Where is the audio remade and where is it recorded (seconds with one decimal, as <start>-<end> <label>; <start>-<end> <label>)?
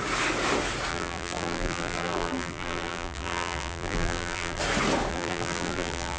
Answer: 0.0-0.9 recorded; 0.9-4.6 remade; 4.6-5.1 recorded; 5.1-6.2 remade